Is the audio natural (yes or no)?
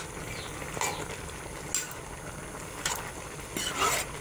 yes